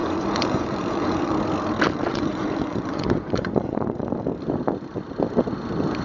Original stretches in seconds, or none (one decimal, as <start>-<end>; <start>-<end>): 1.3-2.1; 4.0-6.0